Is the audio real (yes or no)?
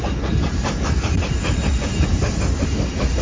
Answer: yes